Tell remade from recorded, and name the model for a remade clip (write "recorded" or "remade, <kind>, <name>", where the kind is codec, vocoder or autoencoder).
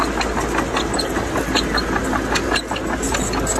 recorded